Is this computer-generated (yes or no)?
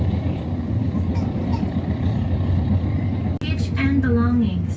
no